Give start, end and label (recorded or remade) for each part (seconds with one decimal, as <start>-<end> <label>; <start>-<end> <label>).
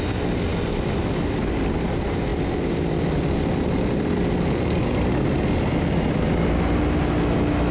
0.0-7.7 recorded